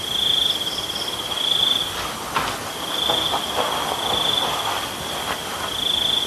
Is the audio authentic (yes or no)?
yes